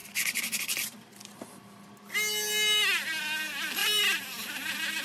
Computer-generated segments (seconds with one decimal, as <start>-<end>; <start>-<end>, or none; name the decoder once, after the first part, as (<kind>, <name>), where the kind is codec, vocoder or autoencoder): 0.0-1.6 (vocoder, BigVGAN v2); 3.8-4.5